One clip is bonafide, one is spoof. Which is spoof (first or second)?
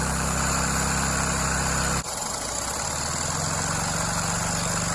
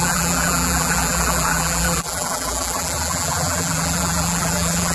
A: second